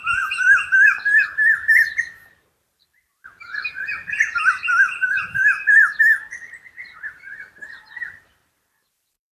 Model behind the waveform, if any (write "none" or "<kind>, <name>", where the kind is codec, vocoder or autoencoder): vocoder, BigVGAN v2